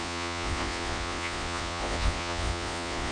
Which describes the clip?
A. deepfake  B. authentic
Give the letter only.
A